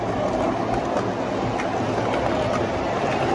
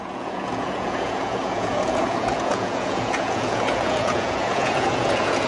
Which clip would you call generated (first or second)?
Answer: second